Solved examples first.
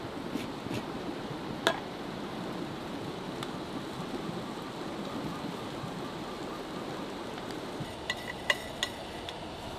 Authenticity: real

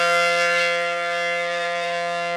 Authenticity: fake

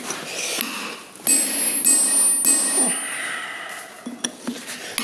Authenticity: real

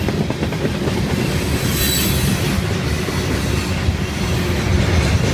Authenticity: real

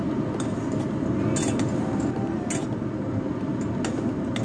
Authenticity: real